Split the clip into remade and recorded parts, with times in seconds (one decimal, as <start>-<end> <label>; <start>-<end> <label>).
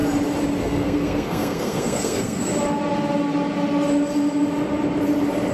0.0-0.6 recorded; 0.6-2.5 remade; 2.5-5.5 recorded